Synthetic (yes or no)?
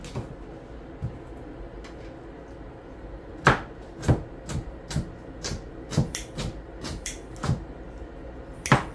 no